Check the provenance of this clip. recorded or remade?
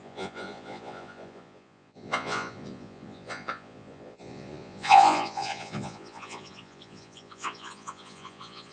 remade